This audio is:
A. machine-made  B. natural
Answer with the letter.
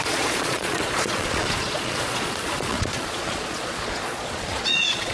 A